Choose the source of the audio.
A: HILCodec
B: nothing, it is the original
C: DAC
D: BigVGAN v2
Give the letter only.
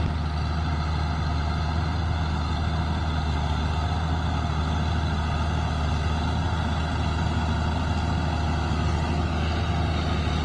B